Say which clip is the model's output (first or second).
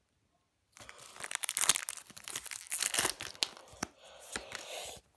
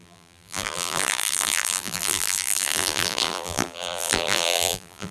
second